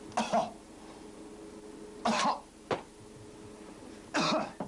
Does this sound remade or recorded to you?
recorded